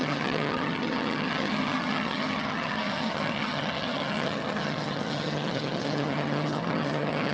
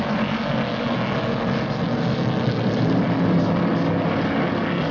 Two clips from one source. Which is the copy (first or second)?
first